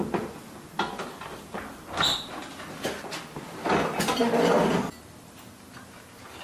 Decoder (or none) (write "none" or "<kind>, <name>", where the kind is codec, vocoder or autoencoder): none